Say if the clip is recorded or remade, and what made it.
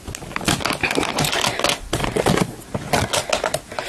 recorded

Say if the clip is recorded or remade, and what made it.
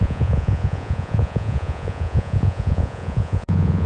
remade, vocoder, Vocos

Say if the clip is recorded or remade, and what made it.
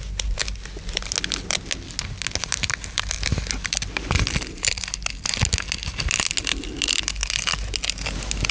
recorded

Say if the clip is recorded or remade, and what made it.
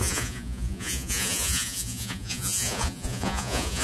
remade, vocoder, Vocos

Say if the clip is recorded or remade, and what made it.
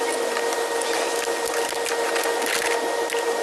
recorded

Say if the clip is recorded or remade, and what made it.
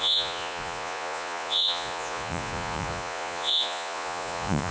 remade, vocoder, Vocos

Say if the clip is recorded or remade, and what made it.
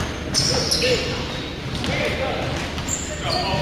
recorded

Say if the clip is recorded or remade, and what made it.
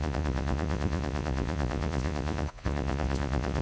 remade, vocoder, Vocos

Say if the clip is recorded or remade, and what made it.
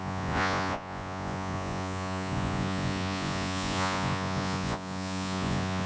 remade, vocoder, Vocos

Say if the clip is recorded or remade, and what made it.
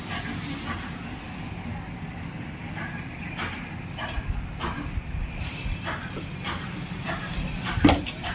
recorded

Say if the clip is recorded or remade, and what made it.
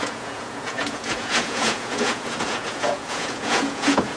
remade, vocoder, Vocos